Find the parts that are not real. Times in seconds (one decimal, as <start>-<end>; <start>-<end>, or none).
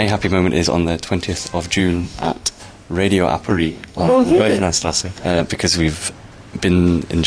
1.8-2.6; 3.5-5.4